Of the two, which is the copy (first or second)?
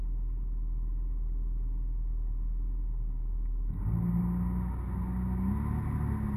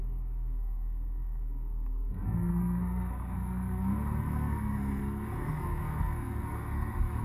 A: second